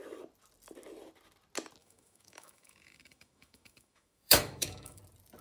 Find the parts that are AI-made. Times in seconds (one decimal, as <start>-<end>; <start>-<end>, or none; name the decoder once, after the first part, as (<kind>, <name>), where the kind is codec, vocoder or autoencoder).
1.8-5.0 (autoencoder, DAC-VAE)